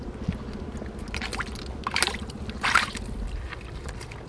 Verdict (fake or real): real